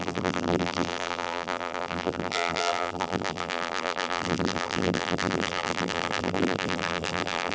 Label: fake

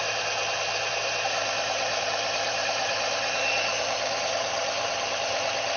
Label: fake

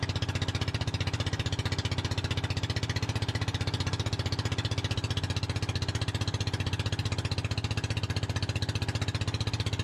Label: real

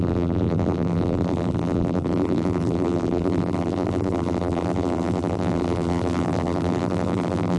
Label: fake